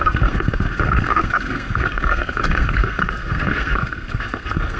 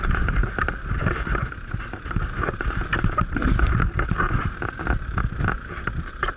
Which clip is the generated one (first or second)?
first